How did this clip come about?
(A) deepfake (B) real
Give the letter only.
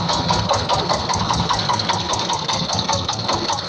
A